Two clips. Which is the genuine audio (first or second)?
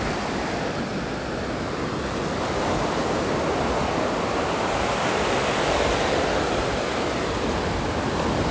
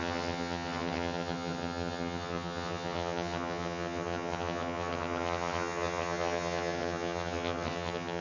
first